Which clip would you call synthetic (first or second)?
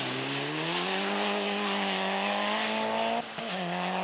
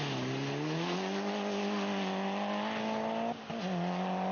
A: first